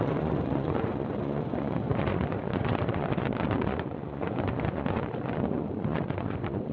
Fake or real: fake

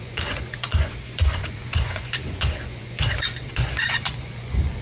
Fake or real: fake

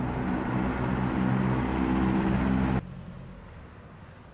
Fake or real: real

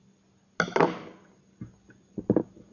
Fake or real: real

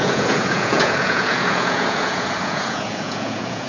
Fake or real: fake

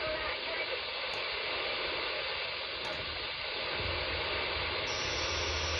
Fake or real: real